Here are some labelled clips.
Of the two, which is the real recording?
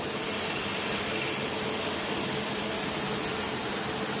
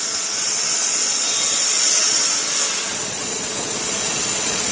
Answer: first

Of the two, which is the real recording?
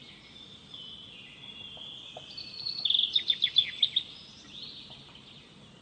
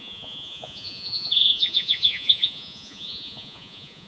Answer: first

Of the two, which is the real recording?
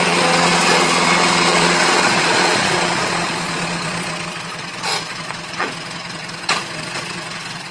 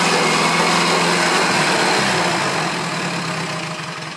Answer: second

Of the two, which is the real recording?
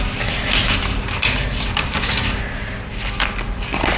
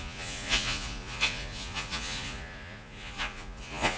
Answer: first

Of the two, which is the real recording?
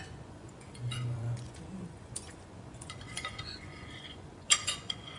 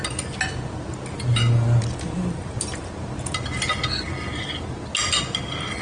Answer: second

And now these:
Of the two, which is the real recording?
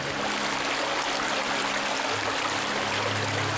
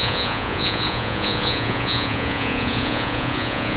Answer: first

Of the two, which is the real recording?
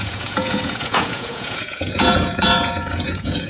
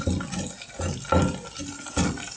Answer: second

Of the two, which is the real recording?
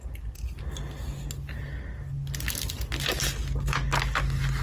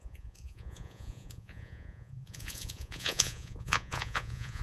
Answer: first